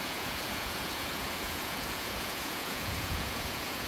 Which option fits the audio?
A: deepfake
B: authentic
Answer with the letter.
A